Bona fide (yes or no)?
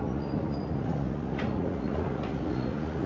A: no